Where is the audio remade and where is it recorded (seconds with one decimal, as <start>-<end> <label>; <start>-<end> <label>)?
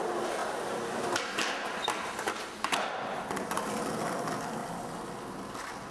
0.0-5.9 recorded